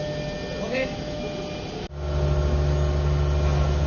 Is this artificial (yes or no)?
no